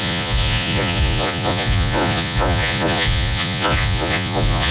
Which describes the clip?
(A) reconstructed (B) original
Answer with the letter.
A